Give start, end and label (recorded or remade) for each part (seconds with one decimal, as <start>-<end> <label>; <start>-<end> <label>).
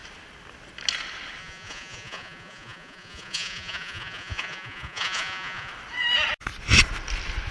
0.0-1.4 recorded; 1.4-5.7 remade; 5.7-7.5 recorded